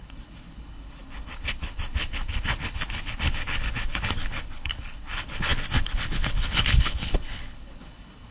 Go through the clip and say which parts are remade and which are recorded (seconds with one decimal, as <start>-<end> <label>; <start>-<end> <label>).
0.0-8.3 remade